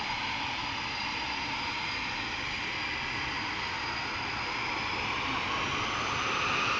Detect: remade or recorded recorded